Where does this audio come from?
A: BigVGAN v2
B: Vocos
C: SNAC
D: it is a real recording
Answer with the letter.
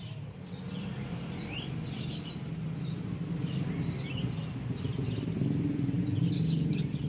D